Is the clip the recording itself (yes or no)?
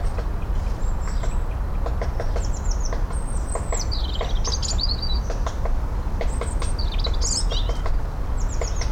yes